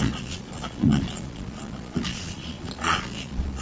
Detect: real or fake fake